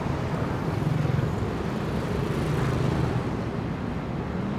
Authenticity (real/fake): real